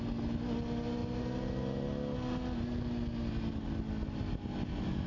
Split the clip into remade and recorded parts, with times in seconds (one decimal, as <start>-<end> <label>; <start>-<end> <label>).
0.0-5.1 recorded

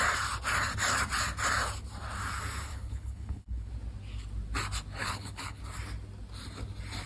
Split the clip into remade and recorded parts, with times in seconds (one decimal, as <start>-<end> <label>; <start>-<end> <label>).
0.0-2.7 recorded; 2.7-3.7 remade; 3.7-5.0 recorded; 5.0-5.6 remade; 5.6-7.1 recorded

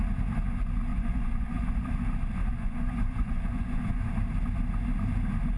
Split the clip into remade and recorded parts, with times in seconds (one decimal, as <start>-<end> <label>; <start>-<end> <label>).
0.0-0.9 recorded; 0.9-1.9 remade; 1.9-2.4 recorded; 2.4-4.1 remade; 4.1-5.6 recorded